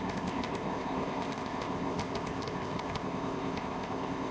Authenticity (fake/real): fake